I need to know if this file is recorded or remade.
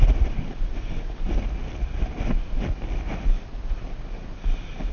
recorded